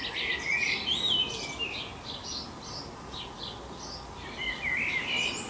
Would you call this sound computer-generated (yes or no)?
no